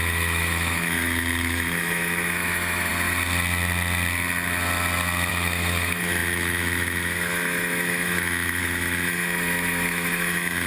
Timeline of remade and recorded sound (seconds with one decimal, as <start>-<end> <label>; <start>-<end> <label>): 0.0-2.9 remade; 2.9-5.3 recorded; 5.3-10.7 remade